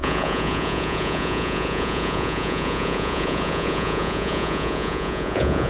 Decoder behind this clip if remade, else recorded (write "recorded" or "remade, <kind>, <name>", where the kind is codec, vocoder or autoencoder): remade, vocoder, Vocos